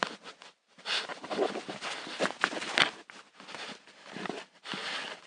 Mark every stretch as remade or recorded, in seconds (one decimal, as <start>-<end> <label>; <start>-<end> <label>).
0.0-5.3 recorded